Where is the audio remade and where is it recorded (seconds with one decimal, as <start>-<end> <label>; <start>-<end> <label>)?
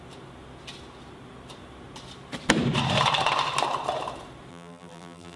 0.0-4.5 recorded; 4.5-5.4 remade